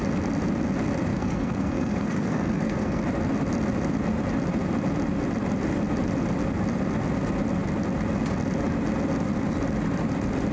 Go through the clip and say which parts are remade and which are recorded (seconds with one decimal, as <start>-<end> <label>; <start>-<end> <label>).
0.0-1.1 recorded; 1.1-3.0 remade; 3.0-10.5 recorded